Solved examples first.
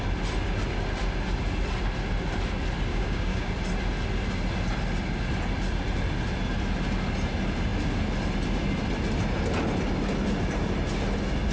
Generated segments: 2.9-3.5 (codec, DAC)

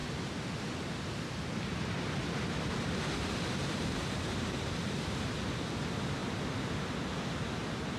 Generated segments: 1.5-6.2 (vocoder, BigVGAN v2); 7.4-8.0

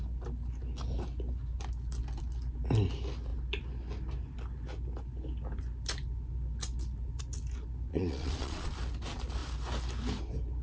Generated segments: 7.9-8.7 (vocoder, Vocos)

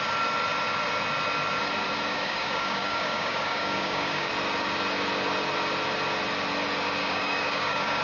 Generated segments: 2.1-4.3 (codec, DAC); 7.0-8.0